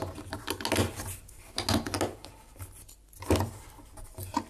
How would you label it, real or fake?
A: real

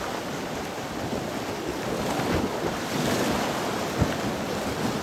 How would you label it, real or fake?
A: real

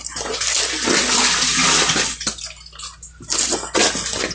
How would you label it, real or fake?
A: real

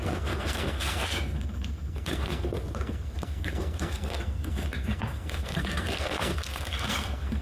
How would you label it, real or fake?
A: fake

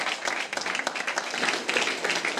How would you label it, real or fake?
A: real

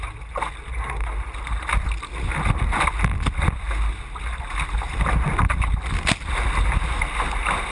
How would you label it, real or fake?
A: real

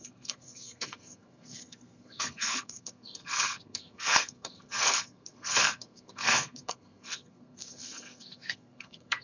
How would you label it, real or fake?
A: fake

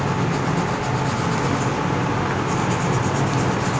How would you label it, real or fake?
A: real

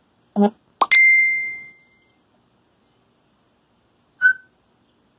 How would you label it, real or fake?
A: real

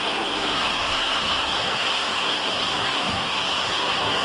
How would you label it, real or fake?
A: fake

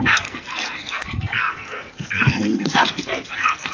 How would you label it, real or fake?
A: fake